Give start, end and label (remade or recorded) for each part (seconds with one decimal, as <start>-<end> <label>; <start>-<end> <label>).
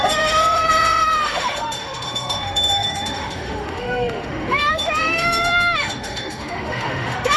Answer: 0.0-7.4 remade